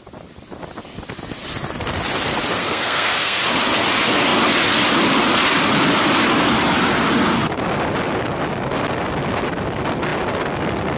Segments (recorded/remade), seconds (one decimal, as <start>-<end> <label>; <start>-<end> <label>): 0.0-2.6 recorded; 2.6-3.4 remade; 3.4-11.0 recorded